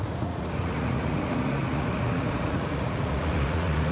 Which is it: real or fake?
fake